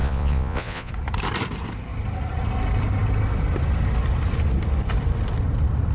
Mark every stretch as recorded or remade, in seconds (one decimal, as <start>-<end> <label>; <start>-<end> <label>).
0.0-0.9 remade; 0.9-5.9 recorded